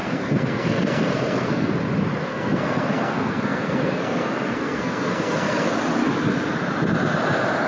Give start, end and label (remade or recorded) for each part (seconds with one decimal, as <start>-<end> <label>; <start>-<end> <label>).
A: 0.0-1.7 remade; 1.7-2.3 recorded; 2.3-5.8 remade; 5.8-7.7 recorded